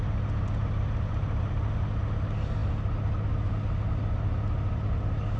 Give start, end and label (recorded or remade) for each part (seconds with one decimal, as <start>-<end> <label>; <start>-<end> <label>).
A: 0.0-5.4 recorded